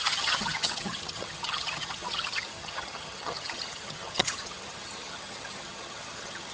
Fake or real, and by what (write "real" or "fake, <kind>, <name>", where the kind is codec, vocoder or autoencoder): fake, vocoder, HiFi-GAN